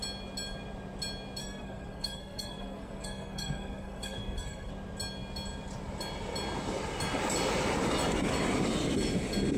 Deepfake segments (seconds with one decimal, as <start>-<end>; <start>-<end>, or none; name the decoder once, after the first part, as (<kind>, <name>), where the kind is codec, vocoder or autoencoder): 1.4-4.7 (codec, SNAC)